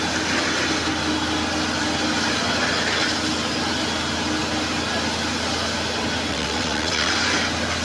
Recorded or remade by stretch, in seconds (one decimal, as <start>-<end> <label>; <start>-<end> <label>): 0.0-6.3 recorded; 6.3-7.1 remade; 7.1-7.8 recorded